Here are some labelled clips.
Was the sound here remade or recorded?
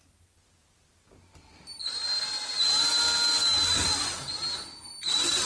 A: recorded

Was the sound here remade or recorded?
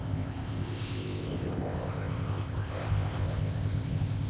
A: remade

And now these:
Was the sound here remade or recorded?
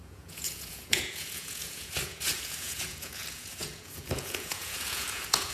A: remade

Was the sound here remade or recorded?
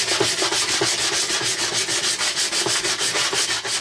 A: recorded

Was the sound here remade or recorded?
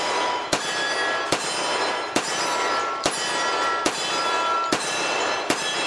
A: remade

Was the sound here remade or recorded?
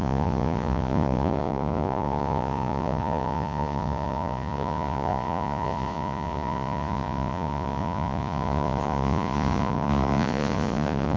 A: remade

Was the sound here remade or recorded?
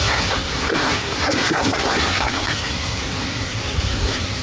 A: remade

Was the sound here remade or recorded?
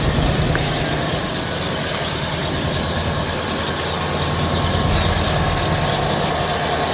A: recorded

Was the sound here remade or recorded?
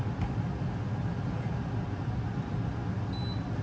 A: recorded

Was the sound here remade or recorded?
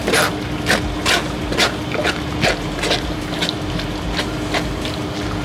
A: recorded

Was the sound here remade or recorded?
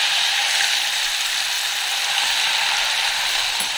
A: remade